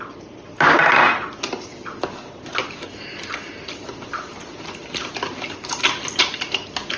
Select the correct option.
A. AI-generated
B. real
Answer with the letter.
B